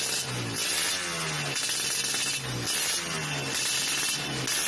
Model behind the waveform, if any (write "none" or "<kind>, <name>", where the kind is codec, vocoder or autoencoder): none